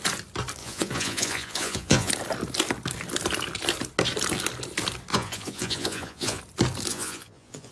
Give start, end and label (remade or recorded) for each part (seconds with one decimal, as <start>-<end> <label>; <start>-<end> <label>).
0.0-0.6 recorded; 0.6-2.1 remade; 2.1-5.1 recorded; 5.1-6.4 remade; 6.4-6.9 recorded; 6.9-7.7 remade